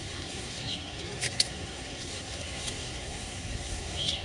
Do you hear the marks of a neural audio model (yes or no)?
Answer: yes